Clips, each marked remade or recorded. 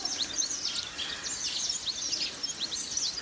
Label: recorded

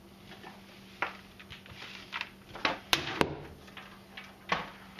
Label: recorded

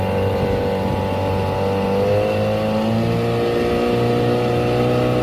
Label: recorded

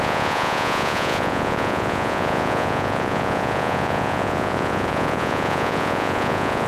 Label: remade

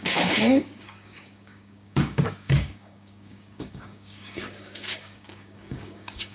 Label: remade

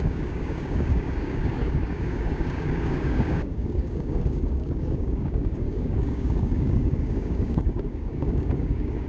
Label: remade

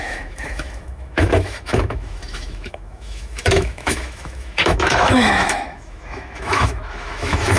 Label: remade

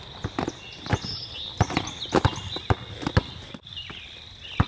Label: recorded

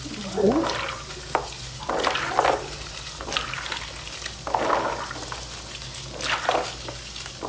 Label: recorded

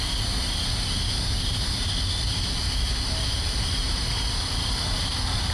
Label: recorded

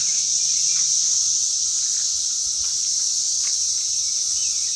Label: recorded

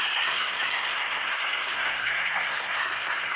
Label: remade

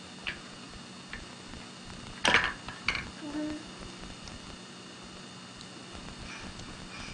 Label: recorded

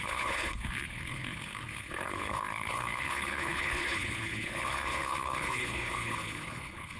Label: remade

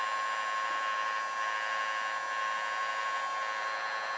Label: recorded